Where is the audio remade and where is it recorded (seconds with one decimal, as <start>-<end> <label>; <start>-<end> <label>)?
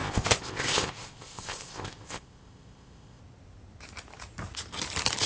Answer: 0.0-3.2 remade; 3.2-5.3 recorded